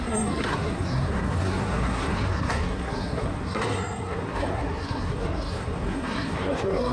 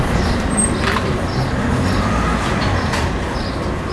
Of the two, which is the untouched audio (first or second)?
second